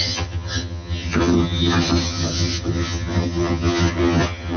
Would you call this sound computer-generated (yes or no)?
yes